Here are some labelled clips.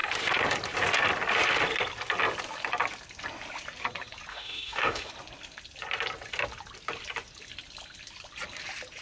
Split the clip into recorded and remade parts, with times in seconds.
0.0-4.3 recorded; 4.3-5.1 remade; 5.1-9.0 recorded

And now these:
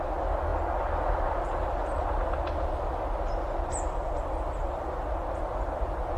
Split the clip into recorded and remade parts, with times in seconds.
0.0-6.2 recorded

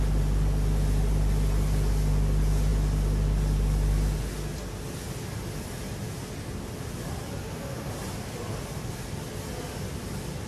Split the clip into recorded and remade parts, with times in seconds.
0.0-7.4 recorded; 7.4-7.9 remade; 7.9-10.5 recorded

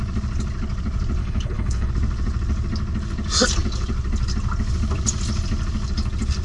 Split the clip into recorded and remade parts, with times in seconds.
0.0-1.2 recorded; 1.2-1.9 remade; 1.9-6.4 recorded

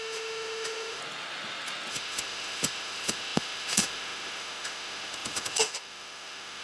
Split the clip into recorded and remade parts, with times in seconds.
0.0-1.0 remade; 1.0-1.9 recorded; 1.9-6.6 remade

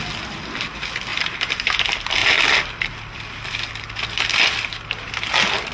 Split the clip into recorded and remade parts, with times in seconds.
0.0-1.1 recorded; 1.1-1.7 remade; 1.7-5.7 recorded